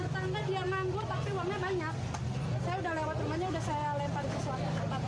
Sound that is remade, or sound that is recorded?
recorded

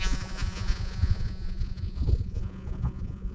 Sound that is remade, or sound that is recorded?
remade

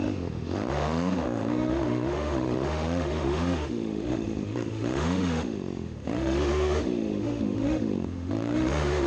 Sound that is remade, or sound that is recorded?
remade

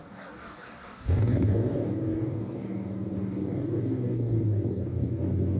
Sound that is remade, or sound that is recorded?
remade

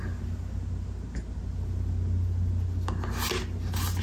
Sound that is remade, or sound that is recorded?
recorded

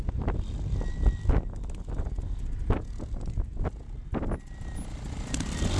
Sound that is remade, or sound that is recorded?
recorded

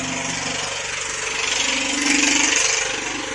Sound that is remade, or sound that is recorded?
recorded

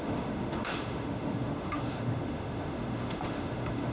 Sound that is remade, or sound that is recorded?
remade